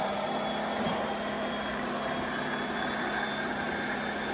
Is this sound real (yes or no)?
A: yes